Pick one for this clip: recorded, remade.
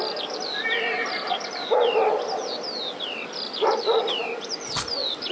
recorded